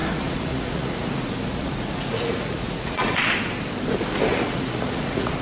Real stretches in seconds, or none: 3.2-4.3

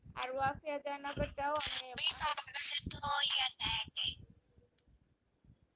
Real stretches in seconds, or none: 0.0-2.3; 4.3-5.8

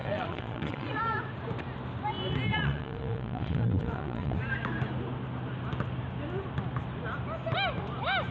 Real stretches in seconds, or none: 1.0-2.5; 4.4-8.3

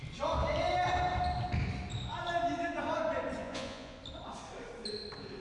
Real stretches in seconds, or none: 0.0-3.4; 4.0-5.4

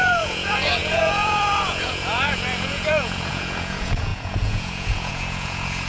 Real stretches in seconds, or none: none

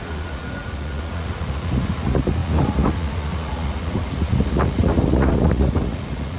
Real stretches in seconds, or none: none

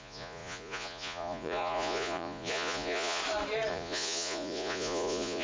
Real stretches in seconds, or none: 3.2-3.7

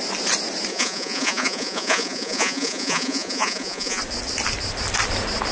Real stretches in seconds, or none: 0.0-0.7; 4.0-5.5